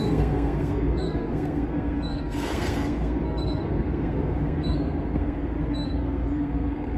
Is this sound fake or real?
fake